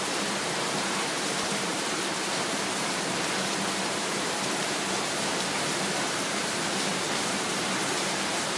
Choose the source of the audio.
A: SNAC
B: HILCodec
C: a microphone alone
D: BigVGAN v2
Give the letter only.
D